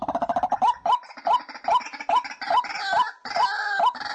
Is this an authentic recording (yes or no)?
yes